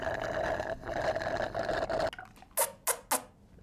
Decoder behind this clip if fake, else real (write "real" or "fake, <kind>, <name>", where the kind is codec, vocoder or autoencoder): real